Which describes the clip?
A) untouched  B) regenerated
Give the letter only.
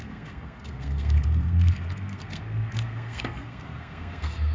B